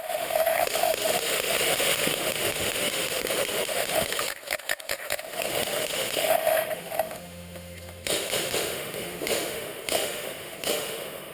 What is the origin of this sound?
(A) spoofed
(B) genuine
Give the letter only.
A